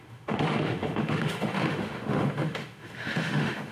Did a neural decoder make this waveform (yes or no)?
yes